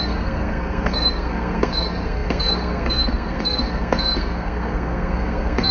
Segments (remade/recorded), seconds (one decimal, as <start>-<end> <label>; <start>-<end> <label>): 0.0-5.7 remade